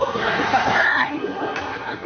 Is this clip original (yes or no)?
no